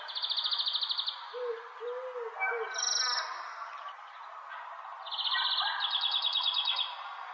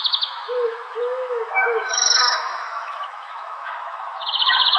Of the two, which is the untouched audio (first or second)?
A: first